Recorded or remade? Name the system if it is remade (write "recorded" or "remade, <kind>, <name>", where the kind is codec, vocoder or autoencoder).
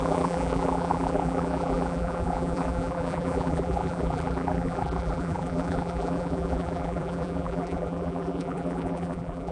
remade, vocoder, BigVGAN v2